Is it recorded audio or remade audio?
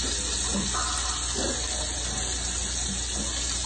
recorded